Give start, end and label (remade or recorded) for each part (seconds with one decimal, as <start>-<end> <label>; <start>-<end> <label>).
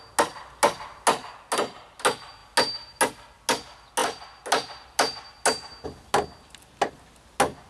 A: 0.0-7.7 recorded